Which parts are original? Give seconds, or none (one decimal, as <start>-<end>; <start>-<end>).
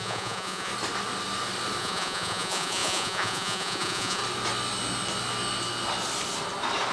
0.7-1.8; 4.2-6.9